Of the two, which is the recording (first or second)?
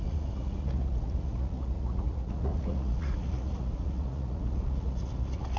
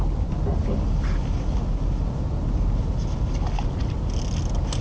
second